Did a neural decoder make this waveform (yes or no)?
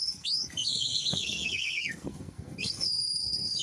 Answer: yes